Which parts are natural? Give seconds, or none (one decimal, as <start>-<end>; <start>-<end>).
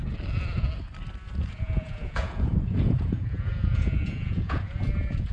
0.0-1.5